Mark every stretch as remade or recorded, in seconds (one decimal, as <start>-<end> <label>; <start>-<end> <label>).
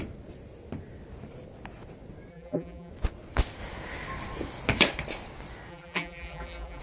0.0-2.3 recorded; 2.3-2.9 remade; 2.9-5.7 recorded; 5.7-6.8 remade